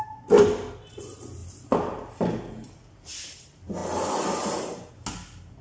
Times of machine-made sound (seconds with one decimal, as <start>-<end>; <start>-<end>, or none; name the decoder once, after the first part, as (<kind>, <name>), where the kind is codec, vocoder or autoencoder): 1.4-2.3 (vocoder, BigVGAN v2)